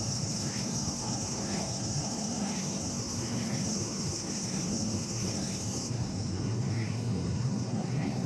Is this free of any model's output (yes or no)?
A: no